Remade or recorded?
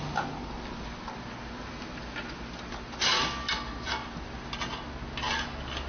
recorded